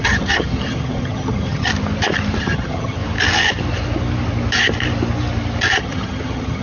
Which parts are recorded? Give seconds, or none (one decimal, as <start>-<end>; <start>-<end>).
1.7-2.4; 3.0-5.8